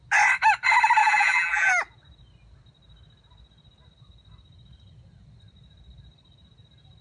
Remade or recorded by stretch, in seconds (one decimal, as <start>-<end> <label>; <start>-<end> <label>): 0.0-1.0 recorded; 1.0-1.7 remade; 1.7-7.0 recorded